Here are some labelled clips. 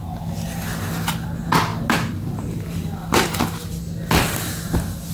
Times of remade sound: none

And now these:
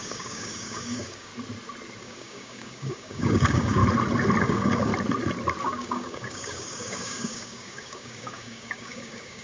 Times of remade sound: 0.0-1.3 (codec, DAC); 2.0-3.8; 4.4-4.9; 5.6-9.4

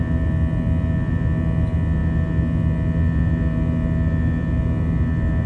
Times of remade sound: none

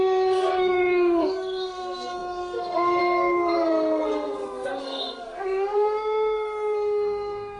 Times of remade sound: 0.0-7.6 (codec, SNAC)

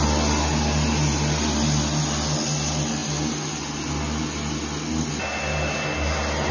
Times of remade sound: none

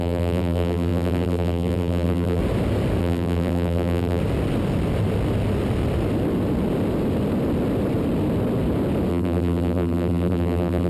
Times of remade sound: 0.0-2.4 (vocoder, BigVGAN v2); 3.0-4.2; 9.1-10.9

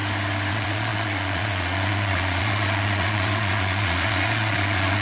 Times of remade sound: 0.5-5.0 (vocoder, Vocos)